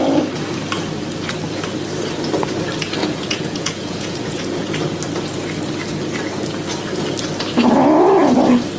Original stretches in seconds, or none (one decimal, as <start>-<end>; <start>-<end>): 0.0-3.0; 4.7-8.8